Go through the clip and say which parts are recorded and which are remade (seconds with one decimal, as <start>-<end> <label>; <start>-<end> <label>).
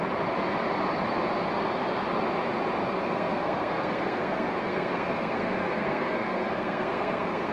0.0-2.9 recorded; 2.9-7.5 remade